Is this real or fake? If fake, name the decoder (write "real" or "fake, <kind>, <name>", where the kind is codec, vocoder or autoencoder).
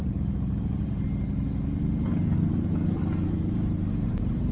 fake, vocoder, BigVGAN v2